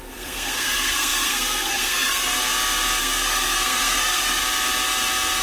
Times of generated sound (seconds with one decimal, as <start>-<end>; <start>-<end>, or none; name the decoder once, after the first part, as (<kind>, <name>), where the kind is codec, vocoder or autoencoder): 0.0-2.3 (codec, SNAC); 3.0-4.4